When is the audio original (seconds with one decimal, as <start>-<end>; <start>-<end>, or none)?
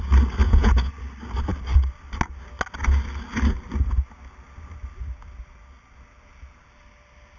0.0-0.4; 0.9-7.4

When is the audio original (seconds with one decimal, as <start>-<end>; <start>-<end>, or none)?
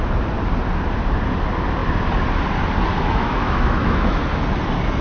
0.0-2.9; 4.2-5.0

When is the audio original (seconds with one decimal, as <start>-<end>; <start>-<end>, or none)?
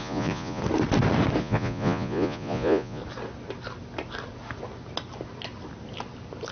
0.6-1.4; 3.0-6.5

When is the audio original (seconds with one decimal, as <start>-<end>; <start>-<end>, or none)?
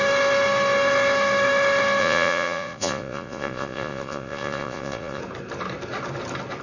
0.0-2.0; 5.2-6.6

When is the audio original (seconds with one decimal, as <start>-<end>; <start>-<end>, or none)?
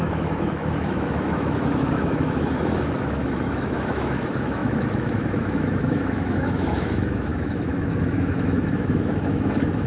none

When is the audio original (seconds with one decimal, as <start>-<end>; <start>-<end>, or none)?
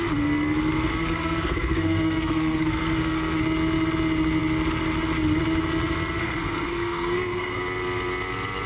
0.0-0.9; 3.4-6.2; 7.6-8.7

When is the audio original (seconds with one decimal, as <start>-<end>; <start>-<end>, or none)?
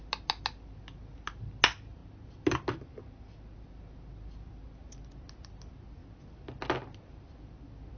0.0-8.0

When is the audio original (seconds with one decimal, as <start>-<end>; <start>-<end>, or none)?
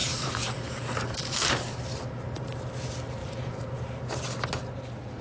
2.7-3.2; 3.8-5.2